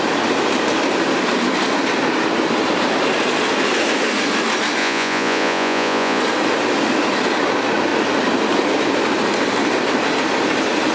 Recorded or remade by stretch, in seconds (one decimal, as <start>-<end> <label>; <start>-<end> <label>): 0.0-4.8 recorded; 4.8-6.2 remade; 6.2-10.9 recorded